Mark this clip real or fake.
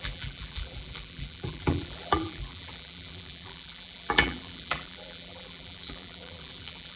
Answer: fake